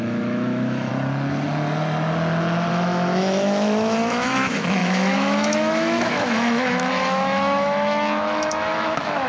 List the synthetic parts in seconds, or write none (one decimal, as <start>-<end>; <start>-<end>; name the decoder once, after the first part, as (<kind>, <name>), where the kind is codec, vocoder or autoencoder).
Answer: 0.0-0.9 (autoencoder, DAC-VAE); 2.7-9.3